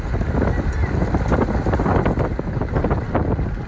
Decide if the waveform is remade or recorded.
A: recorded